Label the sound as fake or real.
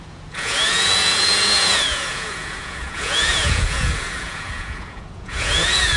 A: fake